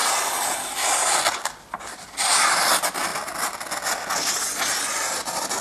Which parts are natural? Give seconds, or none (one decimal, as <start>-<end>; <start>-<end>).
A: 0.0-1.8; 3.1-4.8